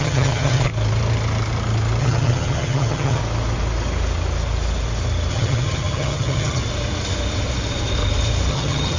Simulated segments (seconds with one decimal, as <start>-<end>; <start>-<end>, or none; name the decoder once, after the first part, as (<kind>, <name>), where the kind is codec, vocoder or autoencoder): 0.0-0.7 (vocoder, HiFi-GAN); 2.0-3.2; 5.3-6.6; 8.5-9.0